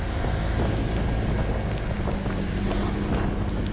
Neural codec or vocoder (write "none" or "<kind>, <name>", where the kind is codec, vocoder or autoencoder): none